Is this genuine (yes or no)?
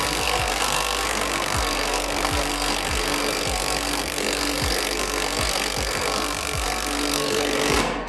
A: no